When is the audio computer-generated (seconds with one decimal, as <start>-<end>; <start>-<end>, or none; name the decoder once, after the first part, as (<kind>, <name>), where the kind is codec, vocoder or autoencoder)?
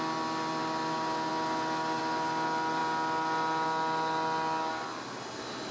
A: none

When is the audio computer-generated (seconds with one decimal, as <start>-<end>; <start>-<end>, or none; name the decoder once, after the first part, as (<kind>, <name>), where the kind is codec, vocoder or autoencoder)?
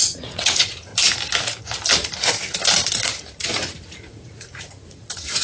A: 0.0-0.9 (vocoder, Vocos); 2.9-5.4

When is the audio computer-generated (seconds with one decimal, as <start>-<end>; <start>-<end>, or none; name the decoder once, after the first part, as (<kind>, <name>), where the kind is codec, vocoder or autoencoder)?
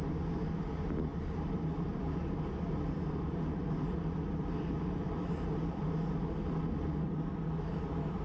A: 1.1-5.9 (vocoder, BigVGAN v2)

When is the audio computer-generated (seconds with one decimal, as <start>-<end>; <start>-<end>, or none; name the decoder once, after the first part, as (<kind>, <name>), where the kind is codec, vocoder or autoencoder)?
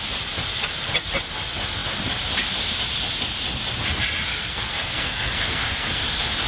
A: 4.3-6.0 (codec, SNAC)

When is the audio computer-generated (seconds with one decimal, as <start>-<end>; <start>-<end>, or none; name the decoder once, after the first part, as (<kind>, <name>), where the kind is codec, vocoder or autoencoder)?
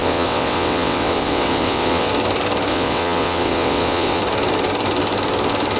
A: 0.0-2.1 (vocoder, WaveNeXt); 2.7-4.2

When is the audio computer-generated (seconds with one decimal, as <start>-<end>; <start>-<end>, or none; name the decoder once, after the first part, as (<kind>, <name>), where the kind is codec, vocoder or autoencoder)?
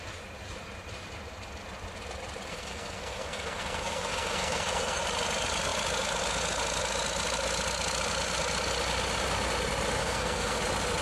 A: 2.5-5.0 (codec, SNAC); 10.0-10.6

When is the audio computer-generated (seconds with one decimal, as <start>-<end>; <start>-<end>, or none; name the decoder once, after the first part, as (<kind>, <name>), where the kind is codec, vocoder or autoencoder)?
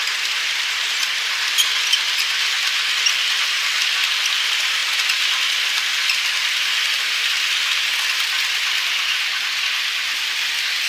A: 0.4-1.1 (vocoder, BigVGAN v2)